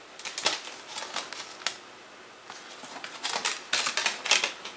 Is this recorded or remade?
recorded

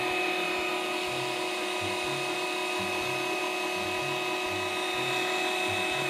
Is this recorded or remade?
recorded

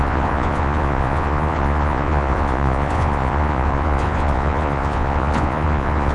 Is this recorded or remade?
remade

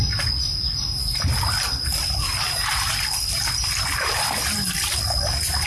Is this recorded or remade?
recorded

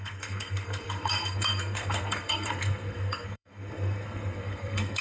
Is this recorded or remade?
remade